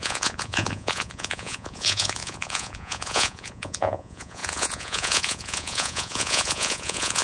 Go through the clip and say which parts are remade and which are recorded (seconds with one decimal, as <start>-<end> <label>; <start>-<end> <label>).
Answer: 0.0-7.2 remade